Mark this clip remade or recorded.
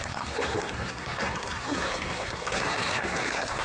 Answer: remade